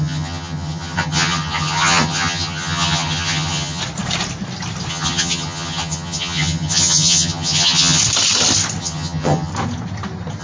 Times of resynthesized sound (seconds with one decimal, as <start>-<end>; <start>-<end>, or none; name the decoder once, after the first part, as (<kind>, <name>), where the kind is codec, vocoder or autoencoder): 0.0-3.8 (vocoder, HiFi-GAN); 4.9-8.0; 8.8-9.5